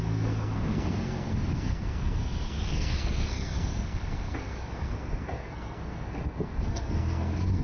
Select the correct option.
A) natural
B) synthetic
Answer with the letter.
B